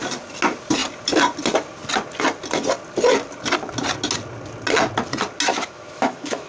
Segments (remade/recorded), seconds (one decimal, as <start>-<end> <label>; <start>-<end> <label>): 0.0-5.5 recorded; 5.5-6.5 remade